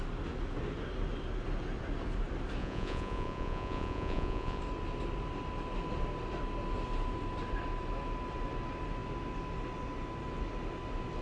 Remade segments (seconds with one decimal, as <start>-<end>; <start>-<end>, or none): 2.6-4.6